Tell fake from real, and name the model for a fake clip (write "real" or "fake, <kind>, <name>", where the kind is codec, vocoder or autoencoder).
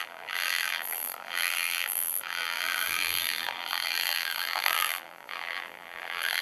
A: fake, vocoder, BigVGAN v2